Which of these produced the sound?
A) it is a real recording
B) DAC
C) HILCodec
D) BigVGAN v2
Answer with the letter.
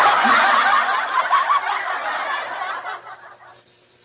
A